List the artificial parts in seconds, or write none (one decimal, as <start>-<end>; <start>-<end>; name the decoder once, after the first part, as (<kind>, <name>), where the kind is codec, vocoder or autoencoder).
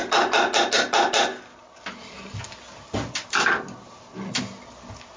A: none